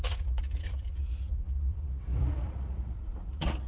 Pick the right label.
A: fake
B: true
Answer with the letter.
A